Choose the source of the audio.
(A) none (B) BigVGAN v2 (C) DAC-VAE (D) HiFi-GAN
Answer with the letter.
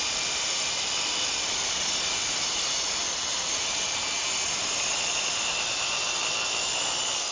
A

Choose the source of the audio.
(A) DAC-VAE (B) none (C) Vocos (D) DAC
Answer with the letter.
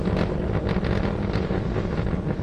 B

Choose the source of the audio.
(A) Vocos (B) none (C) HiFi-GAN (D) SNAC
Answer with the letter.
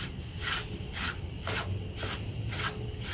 B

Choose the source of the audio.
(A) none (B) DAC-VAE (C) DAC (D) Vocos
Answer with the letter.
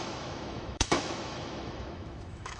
B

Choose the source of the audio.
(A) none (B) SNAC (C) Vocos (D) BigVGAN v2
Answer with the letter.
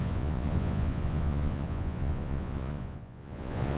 C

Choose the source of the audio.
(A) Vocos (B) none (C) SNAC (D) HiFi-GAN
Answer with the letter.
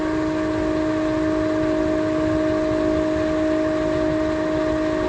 B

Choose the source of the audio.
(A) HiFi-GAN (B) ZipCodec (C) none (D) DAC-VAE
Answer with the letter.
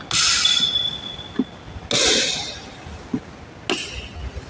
C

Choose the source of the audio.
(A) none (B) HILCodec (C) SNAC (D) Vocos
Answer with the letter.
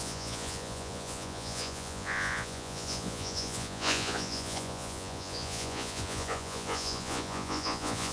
D